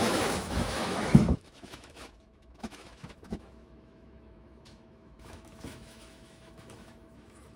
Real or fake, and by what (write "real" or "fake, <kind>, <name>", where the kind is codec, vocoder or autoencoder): fake, autoencoder, DAC-VAE